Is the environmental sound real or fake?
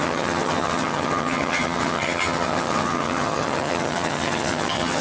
fake